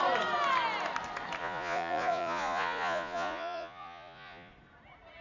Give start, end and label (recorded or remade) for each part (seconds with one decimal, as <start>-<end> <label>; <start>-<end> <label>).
0.0-1.4 recorded; 1.4-4.5 remade; 4.5-5.2 recorded